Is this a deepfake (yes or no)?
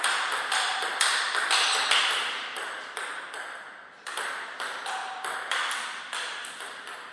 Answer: no